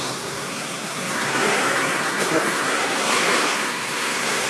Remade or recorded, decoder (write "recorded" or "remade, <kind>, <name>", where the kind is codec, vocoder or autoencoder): remade, codec, SNAC